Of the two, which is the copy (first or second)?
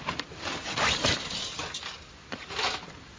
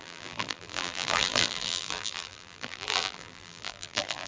second